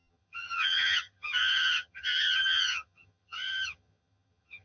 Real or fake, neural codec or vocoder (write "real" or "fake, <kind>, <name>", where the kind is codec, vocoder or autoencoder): fake, vocoder, HiFi-GAN